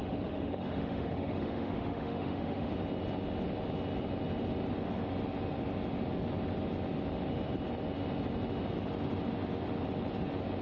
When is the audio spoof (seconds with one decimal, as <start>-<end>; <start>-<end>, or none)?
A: 0.0-2.7